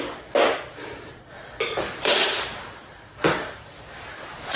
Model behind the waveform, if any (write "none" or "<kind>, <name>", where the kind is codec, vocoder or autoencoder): none